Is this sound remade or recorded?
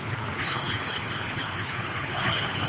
remade